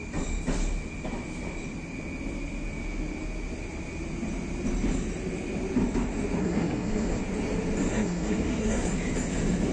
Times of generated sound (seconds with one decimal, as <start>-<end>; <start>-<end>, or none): 6.4-7.2; 7.9-8.9